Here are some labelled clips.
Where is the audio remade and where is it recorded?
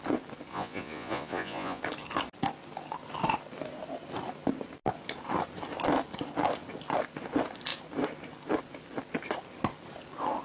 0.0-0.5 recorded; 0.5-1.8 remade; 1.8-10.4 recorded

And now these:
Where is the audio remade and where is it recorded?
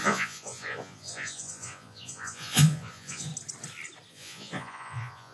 0.0-3.3 remade; 3.3-4.1 recorded; 4.1-5.3 remade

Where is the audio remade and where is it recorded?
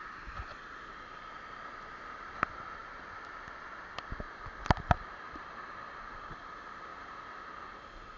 0.0-8.2 recorded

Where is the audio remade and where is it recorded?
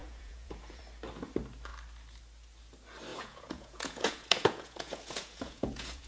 0.0-0.8 remade; 0.8-3.1 recorded; 3.1-6.1 remade